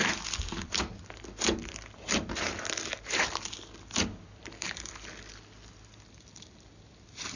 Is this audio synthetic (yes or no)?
no